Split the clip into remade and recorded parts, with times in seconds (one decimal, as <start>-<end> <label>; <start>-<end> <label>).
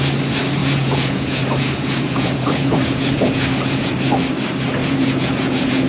0.0-0.6 recorded; 0.6-3.9 remade; 3.9-4.8 recorded; 4.8-5.9 remade